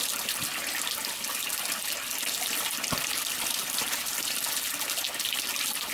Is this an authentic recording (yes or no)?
yes